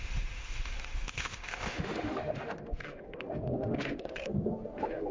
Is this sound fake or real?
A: fake